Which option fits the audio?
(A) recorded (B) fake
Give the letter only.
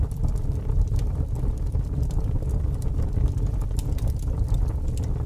A